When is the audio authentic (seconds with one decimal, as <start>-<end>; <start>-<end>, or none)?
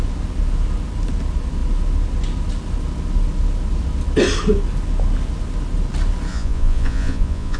0.0-6.3